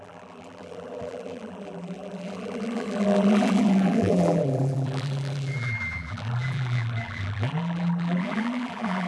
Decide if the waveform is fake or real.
fake